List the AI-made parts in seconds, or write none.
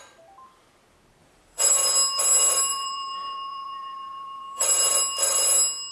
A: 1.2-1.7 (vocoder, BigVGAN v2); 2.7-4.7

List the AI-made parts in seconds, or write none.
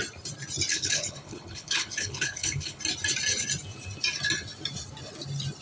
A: 0.7-2.8 (codec, HILCodec)